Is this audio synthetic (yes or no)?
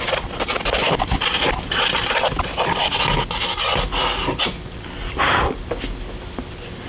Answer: no